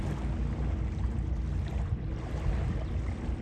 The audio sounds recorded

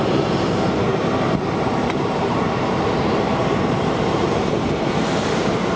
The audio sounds remade